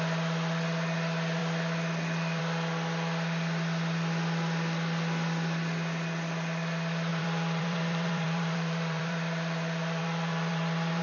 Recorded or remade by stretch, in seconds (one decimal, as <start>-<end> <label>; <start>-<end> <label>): 0.0-7.1 recorded; 7.1-11.0 remade